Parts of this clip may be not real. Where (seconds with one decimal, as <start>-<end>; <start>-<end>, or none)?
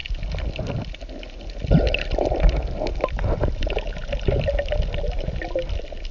none